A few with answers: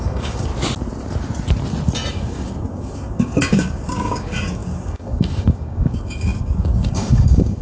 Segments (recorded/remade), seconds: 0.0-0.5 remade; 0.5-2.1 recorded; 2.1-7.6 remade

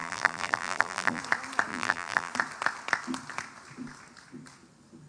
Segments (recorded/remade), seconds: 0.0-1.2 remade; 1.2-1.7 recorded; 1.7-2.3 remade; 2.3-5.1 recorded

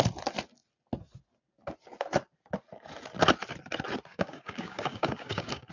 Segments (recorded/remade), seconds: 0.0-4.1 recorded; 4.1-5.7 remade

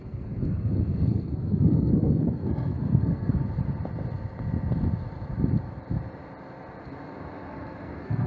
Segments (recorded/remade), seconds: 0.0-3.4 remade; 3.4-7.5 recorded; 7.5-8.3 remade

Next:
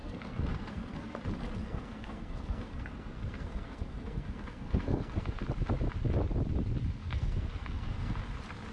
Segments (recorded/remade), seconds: 0.0-1.2 remade; 1.2-1.6 recorded; 1.6-5.4 remade; 5.4-7.0 recorded; 7.0-8.1 remade; 8.1-8.7 recorded

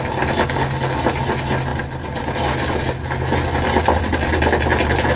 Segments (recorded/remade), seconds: 0.0-5.2 recorded